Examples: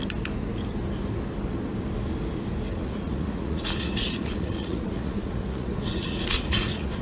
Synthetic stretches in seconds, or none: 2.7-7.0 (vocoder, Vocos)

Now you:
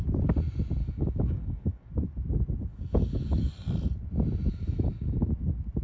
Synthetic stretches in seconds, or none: 0.8-1.9 (codec, DAC); 2.7-3.5; 4.5-5.3

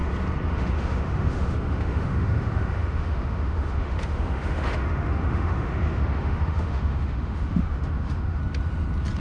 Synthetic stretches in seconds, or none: 0.5-8.4 (autoencoder, DAC-VAE)

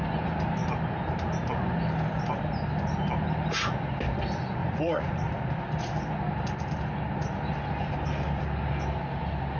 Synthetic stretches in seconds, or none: 4.6-5.3 (vocoder, Vocos)

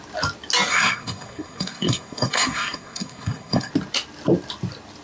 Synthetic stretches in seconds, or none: 0.7-3.7 (codec, SNAC)